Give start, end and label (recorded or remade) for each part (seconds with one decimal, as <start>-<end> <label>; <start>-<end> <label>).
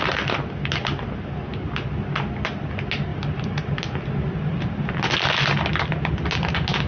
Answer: 0.0-6.9 recorded